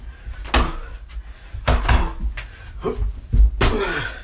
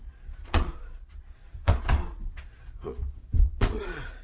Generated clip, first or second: second